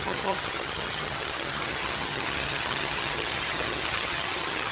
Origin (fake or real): fake